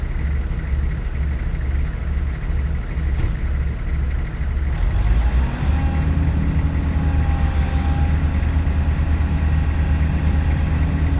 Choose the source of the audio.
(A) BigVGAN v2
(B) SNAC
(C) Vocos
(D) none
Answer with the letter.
D